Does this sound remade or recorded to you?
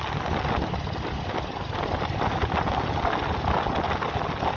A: recorded